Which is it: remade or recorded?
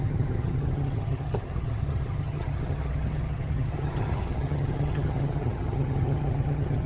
remade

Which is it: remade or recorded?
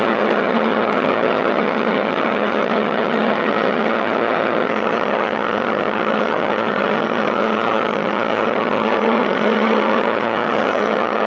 remade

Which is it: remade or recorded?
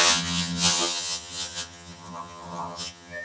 remade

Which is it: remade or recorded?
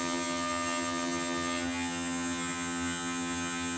remade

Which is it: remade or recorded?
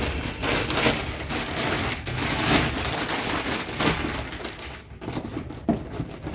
recorded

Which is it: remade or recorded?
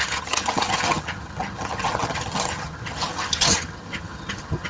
remade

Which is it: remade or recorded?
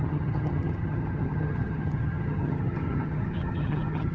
remade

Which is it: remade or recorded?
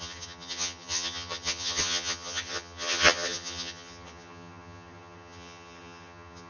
remade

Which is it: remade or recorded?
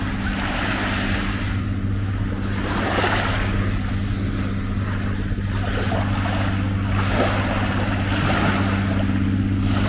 recorded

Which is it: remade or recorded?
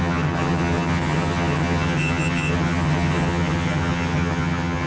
remade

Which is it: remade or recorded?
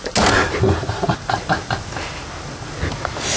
recorded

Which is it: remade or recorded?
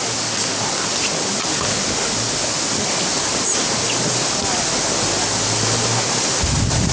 recorded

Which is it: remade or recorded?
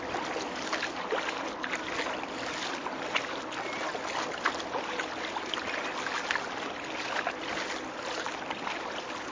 recorded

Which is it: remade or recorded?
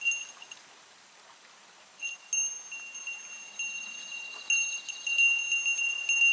recorded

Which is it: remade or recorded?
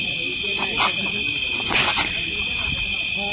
recorded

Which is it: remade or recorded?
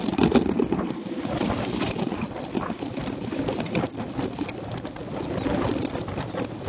recorded